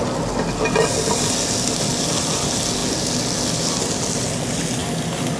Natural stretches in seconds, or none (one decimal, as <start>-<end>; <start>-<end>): 0.0-5.4